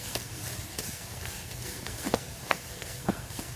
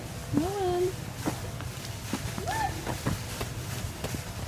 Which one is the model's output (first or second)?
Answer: first